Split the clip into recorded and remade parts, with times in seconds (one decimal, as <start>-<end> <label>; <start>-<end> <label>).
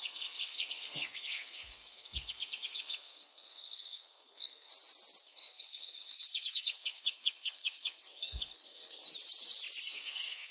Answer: 0.0-4.7 remade; 4.7-5.2 recorded; 5.2-9.0 remade; 9.0-9.8 recorded; 9.8-10.5 remade